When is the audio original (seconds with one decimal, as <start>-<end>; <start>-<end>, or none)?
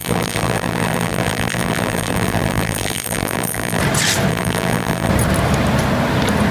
3.8-4.3; 5.1-6.5